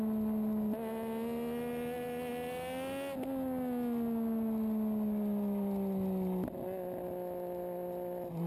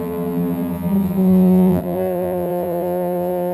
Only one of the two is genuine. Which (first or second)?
first